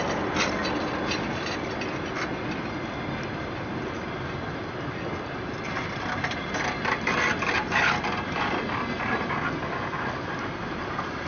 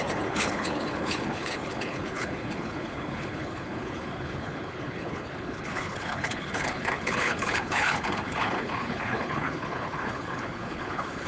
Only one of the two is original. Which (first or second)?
first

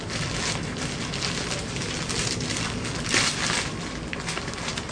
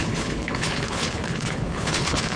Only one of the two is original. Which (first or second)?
first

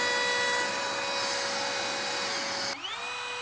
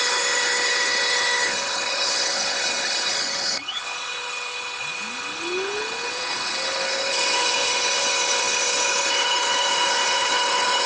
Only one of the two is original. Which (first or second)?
first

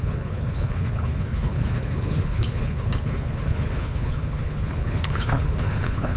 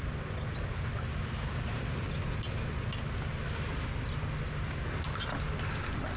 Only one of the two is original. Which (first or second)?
second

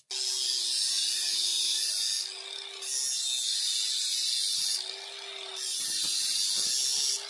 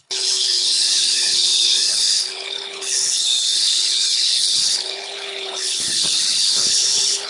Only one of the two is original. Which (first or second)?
first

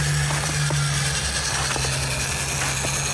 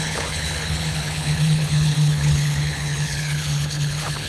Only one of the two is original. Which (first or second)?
first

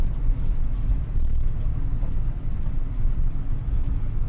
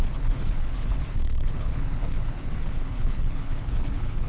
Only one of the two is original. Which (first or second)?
first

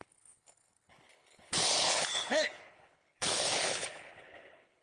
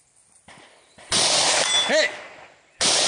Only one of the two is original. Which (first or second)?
second